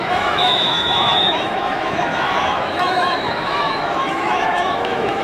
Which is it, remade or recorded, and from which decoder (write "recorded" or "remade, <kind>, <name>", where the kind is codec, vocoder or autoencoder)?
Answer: remade, autoencoder, DAC-VAE